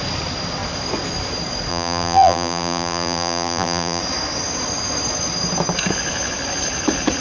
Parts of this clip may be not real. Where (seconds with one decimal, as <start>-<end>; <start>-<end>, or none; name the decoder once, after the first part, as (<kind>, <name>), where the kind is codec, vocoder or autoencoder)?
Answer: 1.7-4.0 (vocoder, BigVGAN v2)